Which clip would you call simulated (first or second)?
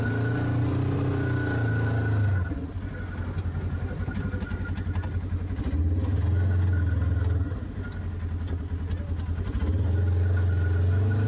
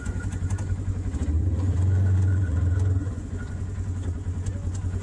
second